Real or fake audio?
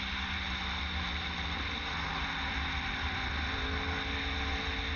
real